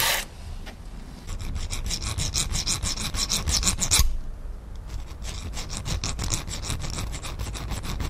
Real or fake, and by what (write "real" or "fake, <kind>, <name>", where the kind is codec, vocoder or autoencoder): real